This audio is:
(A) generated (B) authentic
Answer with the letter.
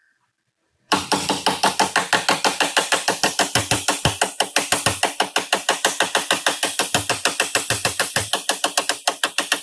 B